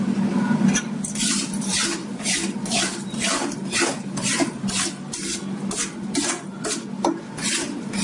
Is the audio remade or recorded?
recorded